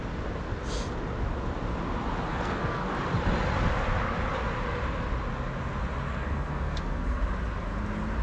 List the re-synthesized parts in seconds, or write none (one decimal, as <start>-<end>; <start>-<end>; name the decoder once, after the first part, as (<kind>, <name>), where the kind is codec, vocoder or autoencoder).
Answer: 2.3-2.9 (codec, SNAC); 6.1-7.2